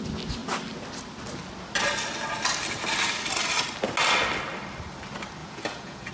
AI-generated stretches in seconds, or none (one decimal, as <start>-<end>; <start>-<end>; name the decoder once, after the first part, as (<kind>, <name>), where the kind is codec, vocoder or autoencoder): 5.4-6.1 (vocoder, Vocos)